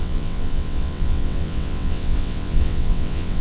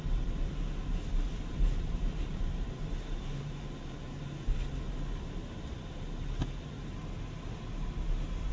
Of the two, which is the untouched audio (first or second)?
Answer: second